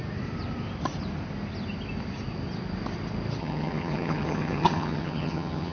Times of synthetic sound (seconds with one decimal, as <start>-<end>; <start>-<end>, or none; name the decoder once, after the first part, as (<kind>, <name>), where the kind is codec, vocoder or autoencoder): 3.4-5.7 (vocoder, HiFi-GAN)